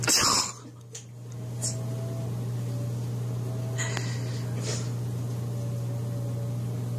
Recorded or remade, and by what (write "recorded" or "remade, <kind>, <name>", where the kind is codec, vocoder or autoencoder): recorded